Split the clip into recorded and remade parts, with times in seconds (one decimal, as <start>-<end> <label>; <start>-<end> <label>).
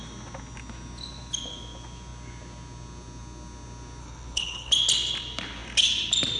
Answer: 0.0-4.0 recorded; 4.0-4.7 remade; 4.7-6.4 recorded